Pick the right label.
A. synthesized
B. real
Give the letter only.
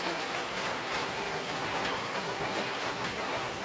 A